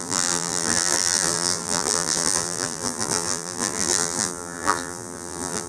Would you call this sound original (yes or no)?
no